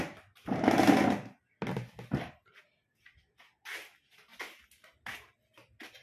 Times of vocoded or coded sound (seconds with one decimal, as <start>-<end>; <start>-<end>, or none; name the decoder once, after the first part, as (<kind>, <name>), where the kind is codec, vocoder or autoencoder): none